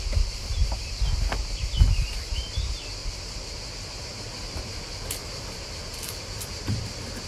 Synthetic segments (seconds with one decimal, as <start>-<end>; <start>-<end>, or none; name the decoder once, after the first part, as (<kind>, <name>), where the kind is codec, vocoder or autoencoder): 0.5-1.0 (vocoder, BigVGAN v2); 5.2-6.8